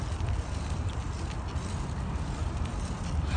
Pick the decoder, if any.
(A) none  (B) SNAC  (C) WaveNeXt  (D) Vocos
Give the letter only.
A